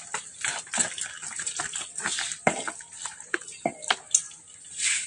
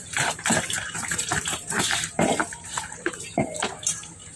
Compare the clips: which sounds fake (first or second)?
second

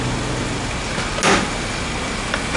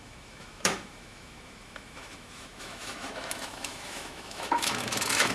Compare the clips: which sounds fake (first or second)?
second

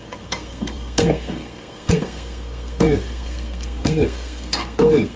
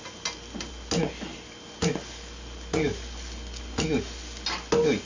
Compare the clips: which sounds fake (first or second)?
first